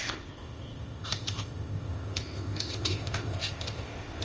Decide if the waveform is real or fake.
fake